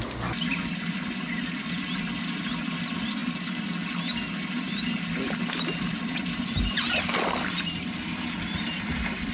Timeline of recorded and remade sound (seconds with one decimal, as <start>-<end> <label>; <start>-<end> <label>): 0.0-9.3 recorded